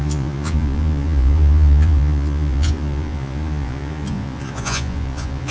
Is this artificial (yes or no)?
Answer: yes